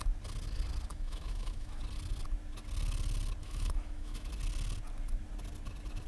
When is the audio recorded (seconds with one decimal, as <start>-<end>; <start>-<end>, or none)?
0.0-0.9; 1.8-3.4; 4.3-6.1